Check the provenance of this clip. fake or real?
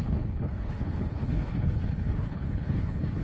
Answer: fake